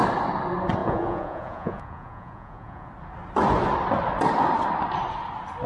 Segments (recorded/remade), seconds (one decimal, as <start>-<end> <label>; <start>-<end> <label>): 0.0-0.8 recorded; 0.8-2.9 remade; 2.9-5.7 recorded